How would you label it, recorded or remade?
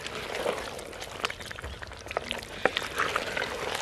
recorded